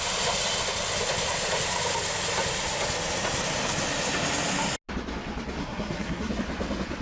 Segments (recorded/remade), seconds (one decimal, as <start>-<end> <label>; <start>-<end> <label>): 0.0-5.6 recorded; 5.6-6.3 remade; 6.3-7.0 recorded